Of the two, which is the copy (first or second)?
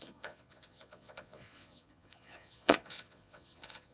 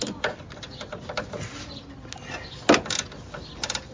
first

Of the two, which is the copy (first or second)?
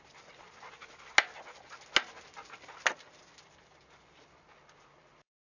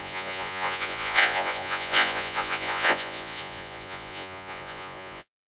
second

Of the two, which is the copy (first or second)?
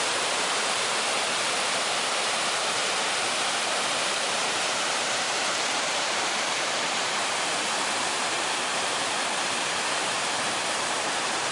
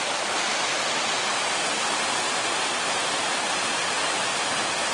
first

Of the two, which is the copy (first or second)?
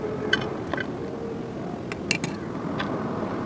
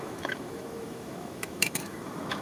second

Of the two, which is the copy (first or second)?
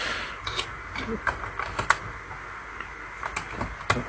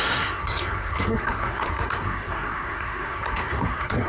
second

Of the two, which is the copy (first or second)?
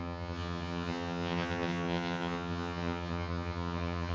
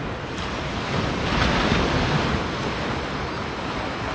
first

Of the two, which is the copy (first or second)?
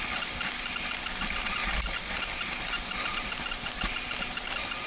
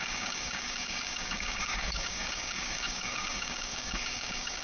second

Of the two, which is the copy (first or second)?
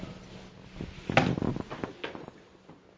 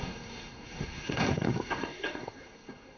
second